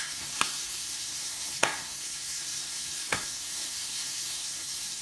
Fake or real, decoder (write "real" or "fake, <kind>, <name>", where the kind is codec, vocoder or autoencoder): fake, codec, SNAC